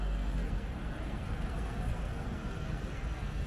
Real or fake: fake